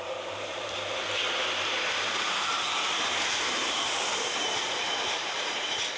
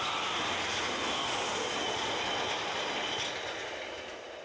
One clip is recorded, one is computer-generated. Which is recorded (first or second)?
second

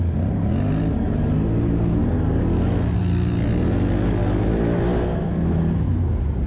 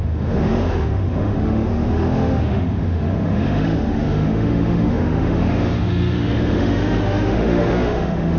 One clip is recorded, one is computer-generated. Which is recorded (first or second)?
first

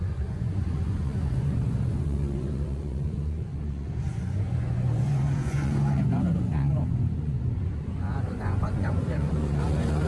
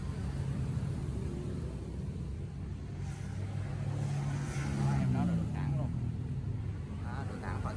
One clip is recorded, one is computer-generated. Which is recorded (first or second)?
second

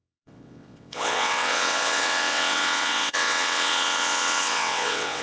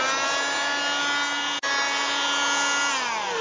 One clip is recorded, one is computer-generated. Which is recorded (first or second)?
second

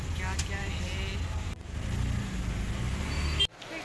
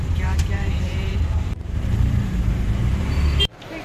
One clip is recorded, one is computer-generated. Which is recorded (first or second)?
first